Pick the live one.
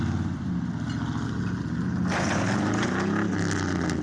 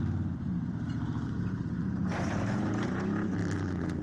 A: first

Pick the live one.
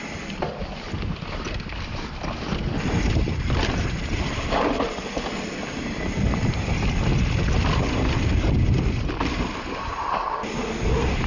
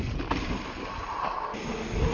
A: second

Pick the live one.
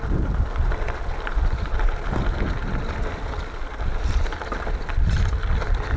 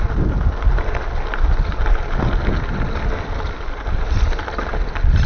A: second